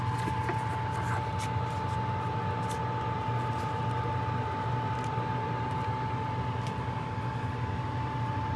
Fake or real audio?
real